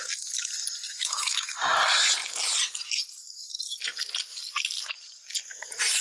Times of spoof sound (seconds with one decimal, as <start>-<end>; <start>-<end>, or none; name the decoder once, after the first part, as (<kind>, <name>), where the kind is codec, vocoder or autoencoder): 0.9-1.7 (autoencoder, DAC-VAE)